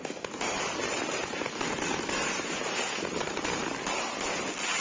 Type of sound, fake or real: real